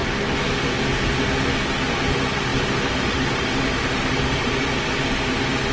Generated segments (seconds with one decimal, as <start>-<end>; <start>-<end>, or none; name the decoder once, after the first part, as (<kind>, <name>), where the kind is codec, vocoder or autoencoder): none